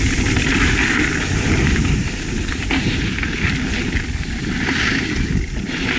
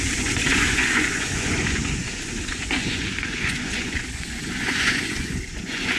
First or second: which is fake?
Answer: second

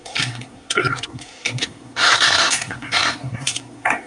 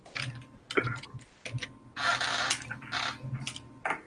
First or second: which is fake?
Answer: first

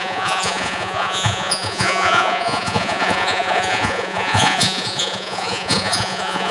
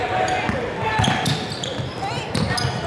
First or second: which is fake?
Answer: first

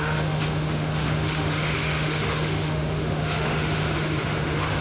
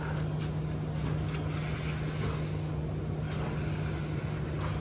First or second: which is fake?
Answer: first